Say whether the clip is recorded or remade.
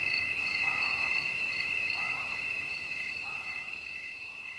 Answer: remade